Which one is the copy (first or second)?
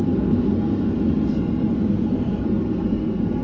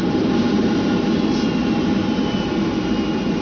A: first